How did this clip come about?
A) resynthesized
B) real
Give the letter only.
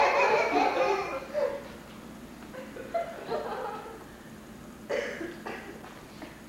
B